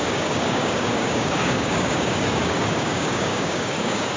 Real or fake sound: fake